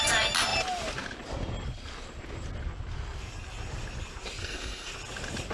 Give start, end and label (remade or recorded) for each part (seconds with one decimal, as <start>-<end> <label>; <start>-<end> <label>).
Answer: 0.0-4.4 recorded; 4.4-4.9 remade; 4.9-5.5 recorded